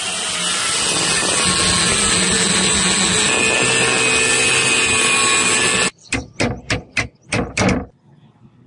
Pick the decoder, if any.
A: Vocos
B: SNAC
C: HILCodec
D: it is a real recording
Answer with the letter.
D